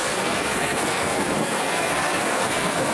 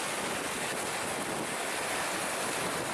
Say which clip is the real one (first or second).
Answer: second